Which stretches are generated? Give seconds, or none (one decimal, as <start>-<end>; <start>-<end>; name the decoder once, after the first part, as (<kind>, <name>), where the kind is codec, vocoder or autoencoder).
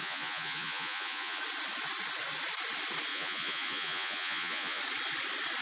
0.0-1.4 (vocoder, Vocos); 3.1-4.8